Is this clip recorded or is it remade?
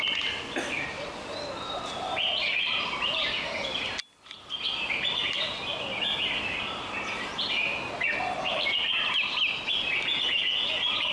recorded